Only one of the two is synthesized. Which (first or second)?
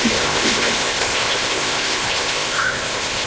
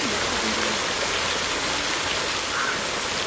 first